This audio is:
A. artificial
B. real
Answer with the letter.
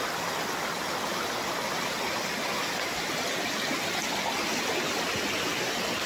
B